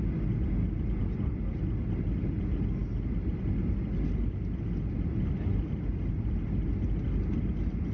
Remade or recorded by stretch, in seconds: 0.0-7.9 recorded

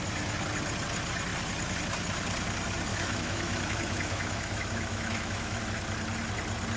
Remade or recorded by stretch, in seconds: 0.0-2.9 recorded; 2.9-5.6 remade; 5.6-6.8 recorded

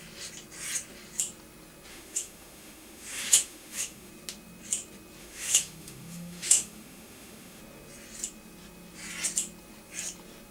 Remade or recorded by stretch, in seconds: 0.0-1.9 recorded; 1.9-4.1 remade; 4.1-5.2 recorded; 5.2-7.6 remade; 7.6-10.5 recorded

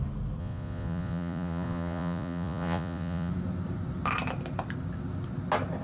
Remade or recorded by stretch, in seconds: 0.0-0.4 recorded; 0.4-3.3 remade; 3.3-5.8 recorded

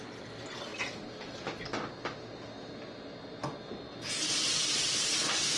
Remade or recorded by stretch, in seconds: 0.0-5.6 recorded

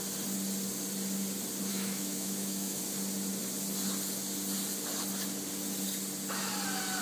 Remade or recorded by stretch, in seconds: 0.0-1.7 recorded; 1.7-2.8 remade; 2.8-7.0 recorded